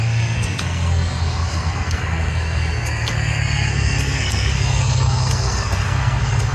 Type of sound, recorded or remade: remade